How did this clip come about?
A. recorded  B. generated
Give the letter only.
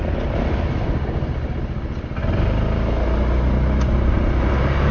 A